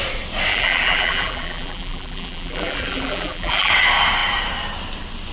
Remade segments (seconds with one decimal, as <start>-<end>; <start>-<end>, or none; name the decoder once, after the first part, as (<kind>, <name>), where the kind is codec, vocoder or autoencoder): 0.5-3.7 (vocoder, BigVGAN v2)